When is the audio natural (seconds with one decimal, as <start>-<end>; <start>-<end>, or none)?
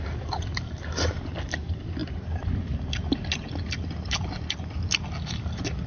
0.0-5.9